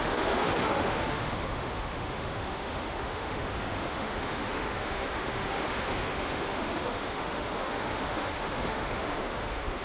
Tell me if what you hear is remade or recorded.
remade